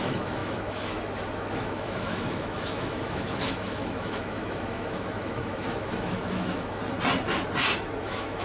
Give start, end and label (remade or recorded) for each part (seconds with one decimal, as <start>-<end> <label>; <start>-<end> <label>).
0.0-6.8 remade; 6.8-8.0 recorded; 8.0-8.4 remade